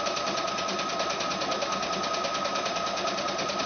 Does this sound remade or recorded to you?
recorded